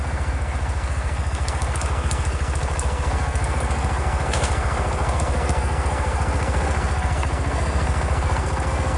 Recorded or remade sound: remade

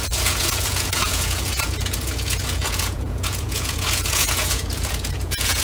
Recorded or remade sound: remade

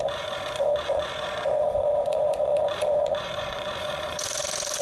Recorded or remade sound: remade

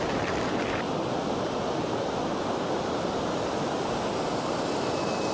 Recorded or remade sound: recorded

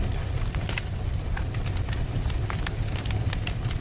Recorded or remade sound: recorded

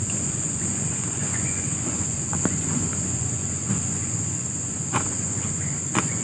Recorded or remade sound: remade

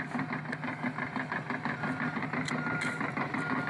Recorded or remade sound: recorded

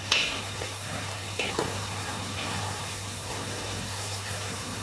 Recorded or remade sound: remade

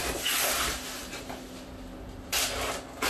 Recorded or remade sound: recorded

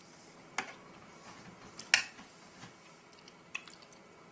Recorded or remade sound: recorded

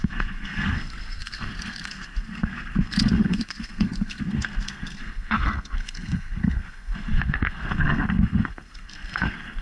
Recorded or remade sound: remade